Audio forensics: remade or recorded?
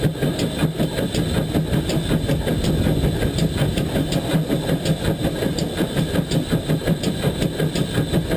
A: recorded